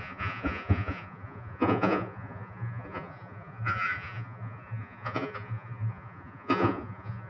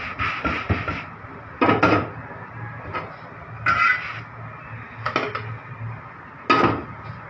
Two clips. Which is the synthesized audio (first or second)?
first